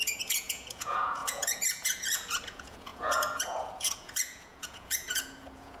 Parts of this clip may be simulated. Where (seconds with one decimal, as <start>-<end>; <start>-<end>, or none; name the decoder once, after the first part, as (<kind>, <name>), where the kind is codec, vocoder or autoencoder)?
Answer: 0.0-5.8 (vocoder, Vocos)